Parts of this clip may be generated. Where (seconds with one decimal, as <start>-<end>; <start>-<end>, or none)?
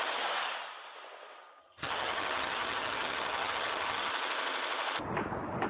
1.6-4.1